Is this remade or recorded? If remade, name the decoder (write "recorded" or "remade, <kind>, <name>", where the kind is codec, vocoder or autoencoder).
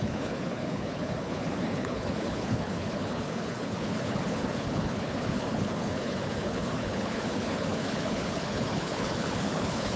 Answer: remade, codec, HILCodec